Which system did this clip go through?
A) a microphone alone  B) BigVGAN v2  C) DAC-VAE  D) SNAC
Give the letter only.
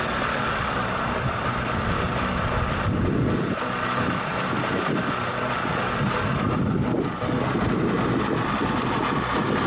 A